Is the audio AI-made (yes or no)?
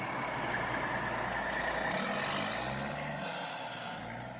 no